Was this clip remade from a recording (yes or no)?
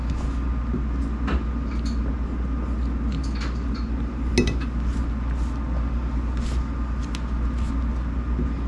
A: no